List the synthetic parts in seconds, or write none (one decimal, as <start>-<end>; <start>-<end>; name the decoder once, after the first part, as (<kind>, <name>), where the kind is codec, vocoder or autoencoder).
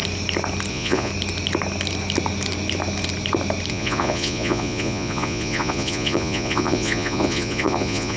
0.7-1.1 (vocoder, Vocos); 3.7-8.2